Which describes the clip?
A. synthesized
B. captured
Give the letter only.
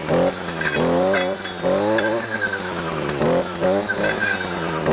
B